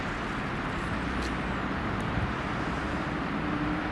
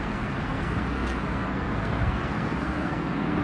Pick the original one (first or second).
first